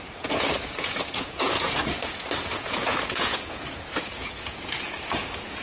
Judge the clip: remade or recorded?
remade